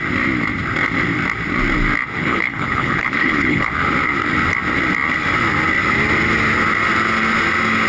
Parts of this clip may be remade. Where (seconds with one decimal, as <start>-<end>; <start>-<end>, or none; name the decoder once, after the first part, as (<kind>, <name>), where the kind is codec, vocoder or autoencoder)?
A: 2.2-3.7 (codec, HILCodec)